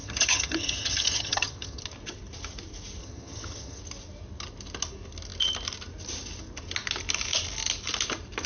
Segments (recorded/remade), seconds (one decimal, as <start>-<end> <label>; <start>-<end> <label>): 0.0-1.8 remade; 1.8-3.0 recorded; 3.0-3.8 remade; 3.8-8.5 recorded